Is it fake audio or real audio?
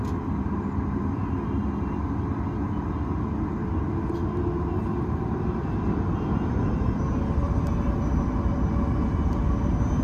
real